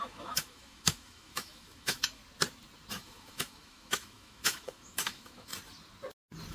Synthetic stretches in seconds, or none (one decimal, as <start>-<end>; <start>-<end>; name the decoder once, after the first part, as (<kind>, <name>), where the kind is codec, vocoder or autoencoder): 0.0-2.2 (autoencoder, DAC-VAE); 2.9-5.5